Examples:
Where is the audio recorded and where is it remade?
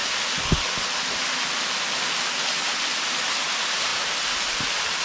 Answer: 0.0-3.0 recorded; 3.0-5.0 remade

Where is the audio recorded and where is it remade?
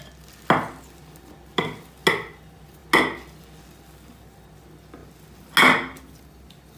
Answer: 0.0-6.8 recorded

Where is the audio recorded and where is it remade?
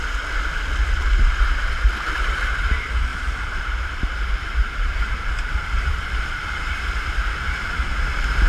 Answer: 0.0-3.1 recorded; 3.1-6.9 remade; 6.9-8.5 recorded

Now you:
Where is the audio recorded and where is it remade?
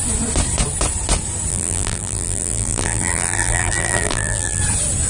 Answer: 0.0-1.5 recorded; 1.5-4.6 remade; 4.6-5.1 recorded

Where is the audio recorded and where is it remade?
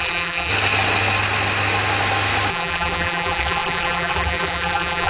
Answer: 0.0-0.5 remade; 0.5-2.5 recorded; 2.5-5.1 remade